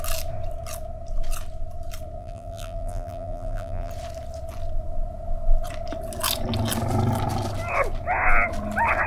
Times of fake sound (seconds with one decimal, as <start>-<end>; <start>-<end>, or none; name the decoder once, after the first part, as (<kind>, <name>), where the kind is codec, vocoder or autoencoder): 2.2-3.9 (vocoder, BigVGAN v2)